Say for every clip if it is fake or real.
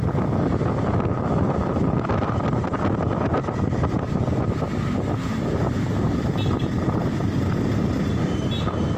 real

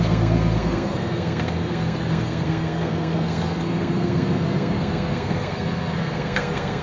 fake